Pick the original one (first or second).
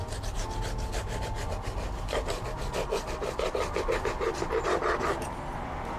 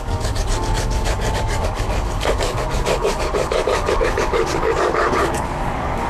first